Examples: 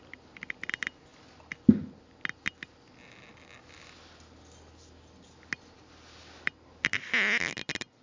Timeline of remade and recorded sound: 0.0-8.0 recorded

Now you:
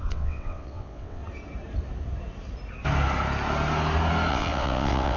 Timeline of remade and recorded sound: 0.0-1.2 remade; 1.2-4.3 recorded; 4.3-5.2 remade

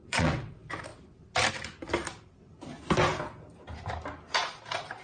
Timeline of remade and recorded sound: 0.0-0.5 remade; 0.5-5.0 recorded

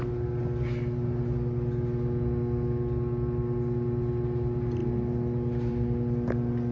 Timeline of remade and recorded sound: 0.0-6.7 recorded